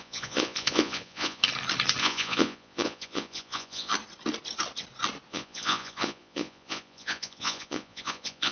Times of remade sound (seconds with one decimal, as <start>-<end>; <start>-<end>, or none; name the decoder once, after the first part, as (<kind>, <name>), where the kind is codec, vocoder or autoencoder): 0.0-1.4 (vocoder, Vocos); 2.0-3.9; 5.3-8.5